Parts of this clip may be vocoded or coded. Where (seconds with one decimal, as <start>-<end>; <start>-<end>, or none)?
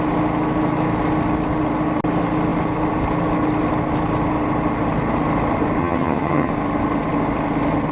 5.8-6.5